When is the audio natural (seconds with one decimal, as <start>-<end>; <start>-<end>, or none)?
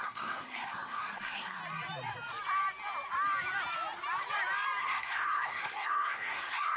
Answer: 1.6-4.8